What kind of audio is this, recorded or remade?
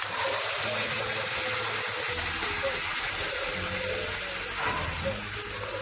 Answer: recorded